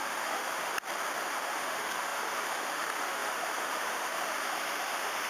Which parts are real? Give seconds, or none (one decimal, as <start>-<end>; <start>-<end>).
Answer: 0.7-1.2